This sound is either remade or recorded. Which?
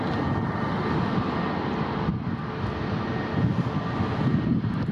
recorded